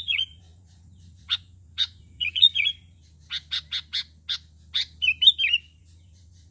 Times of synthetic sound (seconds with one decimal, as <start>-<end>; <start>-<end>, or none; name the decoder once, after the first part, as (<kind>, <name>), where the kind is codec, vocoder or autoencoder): 0.0-3.0 (vocoder, Vocos); 5.8-6.5